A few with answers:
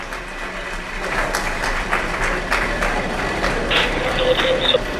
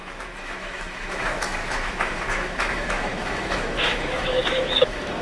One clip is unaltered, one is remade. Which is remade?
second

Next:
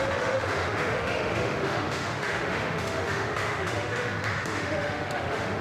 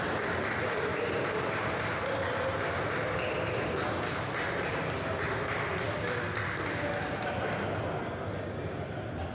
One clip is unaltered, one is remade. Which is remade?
first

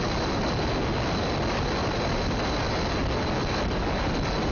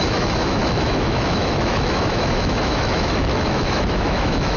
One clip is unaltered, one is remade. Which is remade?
second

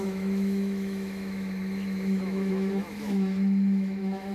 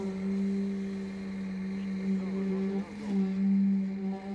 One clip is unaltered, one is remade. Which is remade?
first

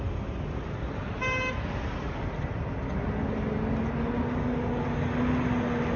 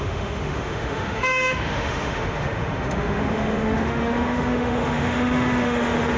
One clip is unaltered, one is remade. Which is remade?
second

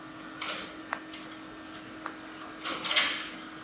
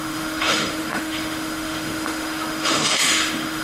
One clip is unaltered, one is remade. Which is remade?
second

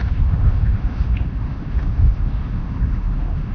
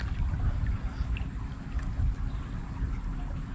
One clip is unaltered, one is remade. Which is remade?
first